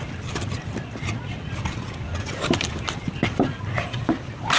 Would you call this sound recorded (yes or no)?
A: yes